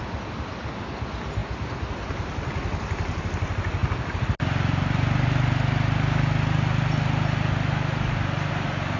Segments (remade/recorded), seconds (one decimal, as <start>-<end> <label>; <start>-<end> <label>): 0.0-9.0 recorded